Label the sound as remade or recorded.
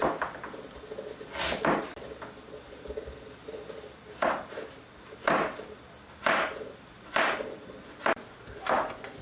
recorded